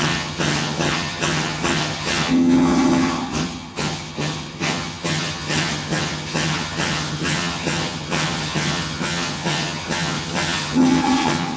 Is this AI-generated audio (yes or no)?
yes